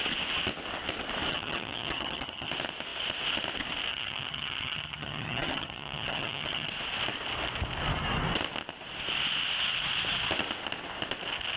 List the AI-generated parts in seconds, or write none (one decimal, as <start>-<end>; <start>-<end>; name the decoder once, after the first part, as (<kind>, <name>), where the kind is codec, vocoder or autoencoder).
1.3-2.5 (vocoder, HiFi-GAN); 3.9-6.7